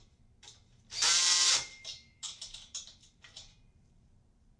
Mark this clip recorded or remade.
remade